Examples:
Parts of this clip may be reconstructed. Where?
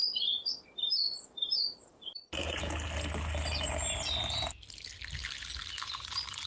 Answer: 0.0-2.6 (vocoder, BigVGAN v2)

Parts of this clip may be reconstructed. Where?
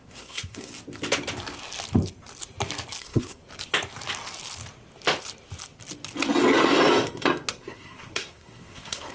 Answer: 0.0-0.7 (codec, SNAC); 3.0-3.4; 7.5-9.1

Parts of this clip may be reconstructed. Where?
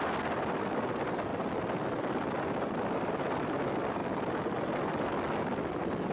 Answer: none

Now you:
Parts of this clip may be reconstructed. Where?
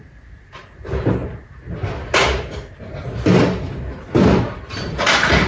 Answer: none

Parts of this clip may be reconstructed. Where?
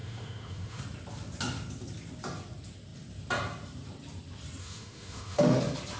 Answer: 0.0-0.8 (autoencoder, DAC-VAE); 4.6-5.6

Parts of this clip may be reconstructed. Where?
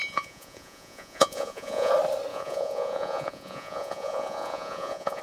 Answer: 0.0-1.9 (vocoder, Vocos); 2.3-5.2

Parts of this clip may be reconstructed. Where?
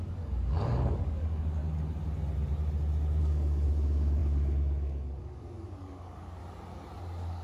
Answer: 0.0-1.6 (codec, DAC); 3.2-6.4; 7.0-7.4